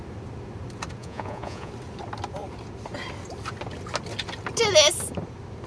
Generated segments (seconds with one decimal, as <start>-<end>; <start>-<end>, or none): 1.0-1.7